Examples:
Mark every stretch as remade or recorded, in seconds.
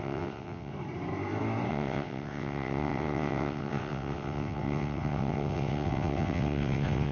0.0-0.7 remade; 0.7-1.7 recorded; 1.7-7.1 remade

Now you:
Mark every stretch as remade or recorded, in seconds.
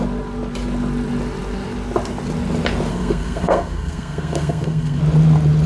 0.0-2.9 recorded; 2.9-5.0 remade; 5.0-5.7 recorded